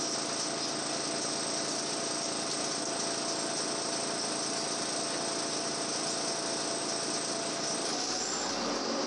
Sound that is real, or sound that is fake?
real